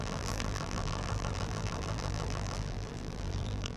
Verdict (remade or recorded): remade